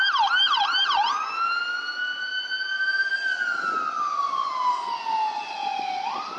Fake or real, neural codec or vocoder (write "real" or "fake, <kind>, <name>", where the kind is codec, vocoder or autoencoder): real